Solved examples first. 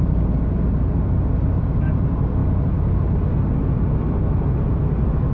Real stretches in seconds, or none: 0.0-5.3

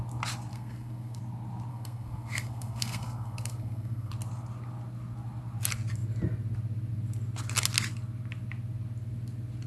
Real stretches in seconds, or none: 0.0-0.5; 1.2-1.7; 4.1-9.7

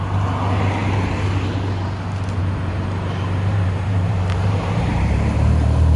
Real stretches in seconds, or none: 0.0-2.4

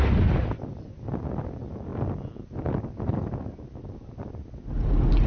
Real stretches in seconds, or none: 0.0-5.3